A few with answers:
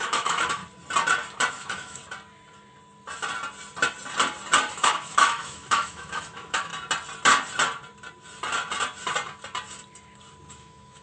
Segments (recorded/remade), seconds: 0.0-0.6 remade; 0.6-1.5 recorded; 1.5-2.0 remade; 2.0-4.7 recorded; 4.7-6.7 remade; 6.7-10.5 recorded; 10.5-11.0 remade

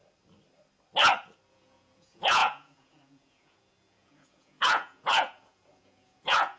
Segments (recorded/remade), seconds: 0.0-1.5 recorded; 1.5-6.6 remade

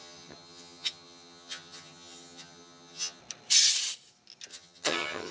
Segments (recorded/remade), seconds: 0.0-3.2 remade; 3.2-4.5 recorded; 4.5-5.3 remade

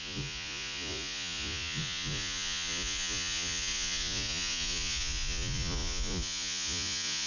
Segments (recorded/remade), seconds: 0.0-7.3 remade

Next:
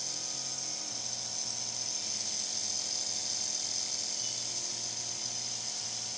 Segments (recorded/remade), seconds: 0.0-6.2 recorded

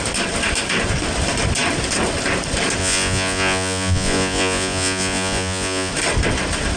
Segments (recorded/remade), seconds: 0.0-2.8 recorded; 2.8-5.9 remade; 5.9-6.8 recorded